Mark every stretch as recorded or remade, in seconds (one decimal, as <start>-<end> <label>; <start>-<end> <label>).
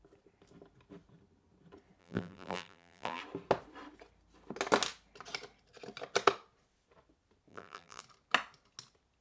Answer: 0.0-2.0 recorded; 2.0-3.2 remade; 3.2-7.5 recorded; 7.5-8.0 remade; 8.0-9.2 recorded